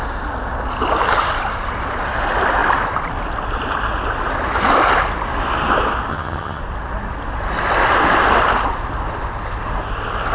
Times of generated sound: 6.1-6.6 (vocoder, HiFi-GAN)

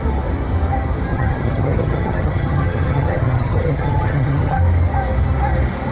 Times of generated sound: 1.1-4.6 (vocoder, HiFi-GAN)

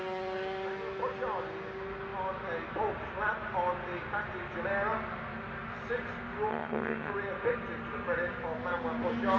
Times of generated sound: 6.5-7.1 (vocoder, HiFi-GAN)

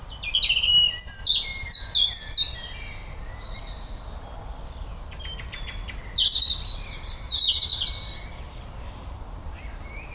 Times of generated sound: none